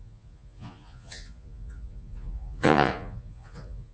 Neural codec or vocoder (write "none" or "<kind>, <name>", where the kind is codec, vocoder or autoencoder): vocoder, Vocos